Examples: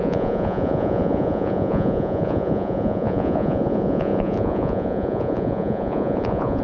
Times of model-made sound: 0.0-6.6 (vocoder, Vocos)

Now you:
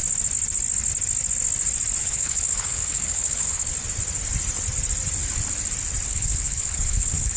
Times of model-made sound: 2.0-3.7 (codec, HILCodec); 6.1-7.4

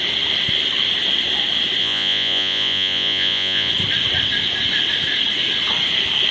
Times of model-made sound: 1.8-3.7 (vocoder, Vocos)